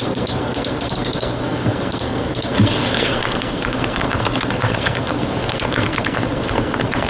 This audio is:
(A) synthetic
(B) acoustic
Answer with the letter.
A